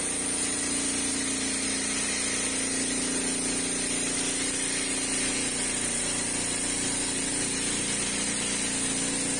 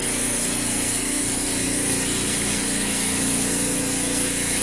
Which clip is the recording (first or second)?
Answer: first